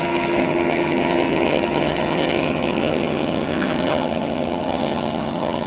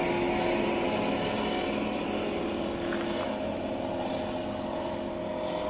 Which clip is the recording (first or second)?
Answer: second